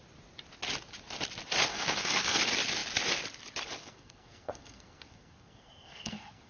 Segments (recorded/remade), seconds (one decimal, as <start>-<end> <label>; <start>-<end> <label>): 0.0-1.7 recorded; 1.7-2.4 remade; 2.4-3.8 recorded; 3.8-6.5 remade